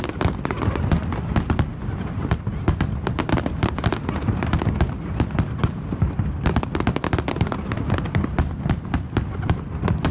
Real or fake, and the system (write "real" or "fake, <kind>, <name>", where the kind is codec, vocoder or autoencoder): real